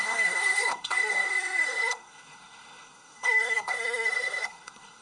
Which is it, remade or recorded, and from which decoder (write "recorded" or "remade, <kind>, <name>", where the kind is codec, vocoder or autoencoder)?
remade, codec, SNAC